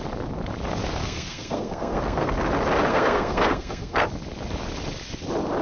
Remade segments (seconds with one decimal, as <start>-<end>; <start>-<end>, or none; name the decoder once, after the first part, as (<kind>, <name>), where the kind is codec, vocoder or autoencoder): 1.0-2.3 (codec, SNAC); 2.9-4.1